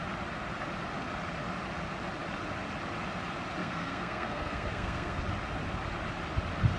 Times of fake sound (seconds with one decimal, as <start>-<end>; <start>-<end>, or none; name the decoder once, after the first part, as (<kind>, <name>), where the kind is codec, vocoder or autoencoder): 3.6-5.2 (codec, SNAC)

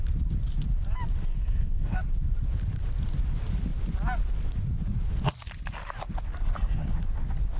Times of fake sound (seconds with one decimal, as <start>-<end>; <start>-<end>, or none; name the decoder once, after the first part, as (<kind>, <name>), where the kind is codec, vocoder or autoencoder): 1.3-2.0 (codec, SNAC)

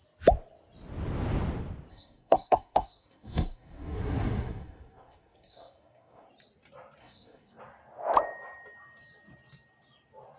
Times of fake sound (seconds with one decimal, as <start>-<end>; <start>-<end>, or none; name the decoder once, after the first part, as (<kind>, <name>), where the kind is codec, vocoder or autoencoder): 1.9-6.3 (codec, SNAC); 7.0-7.6

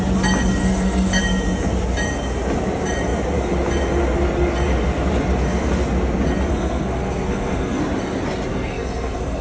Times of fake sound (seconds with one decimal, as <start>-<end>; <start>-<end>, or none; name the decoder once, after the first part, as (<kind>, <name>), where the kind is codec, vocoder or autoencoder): 0.6-1.2 (codec, SNAC); 6.5-7.8; 8.5-9.4

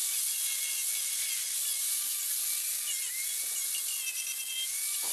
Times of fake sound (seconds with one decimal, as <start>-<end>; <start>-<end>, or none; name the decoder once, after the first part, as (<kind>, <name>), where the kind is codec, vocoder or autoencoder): none

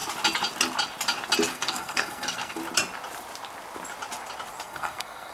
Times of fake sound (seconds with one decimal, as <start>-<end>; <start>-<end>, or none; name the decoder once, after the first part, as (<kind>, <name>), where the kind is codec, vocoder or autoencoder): 1.5-2.6 (codec, SNAC); 4.6-5.3